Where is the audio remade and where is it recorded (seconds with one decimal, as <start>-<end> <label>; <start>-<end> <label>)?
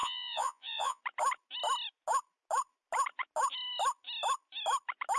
0.0-1.0 remade; 1.0-5.2 recorded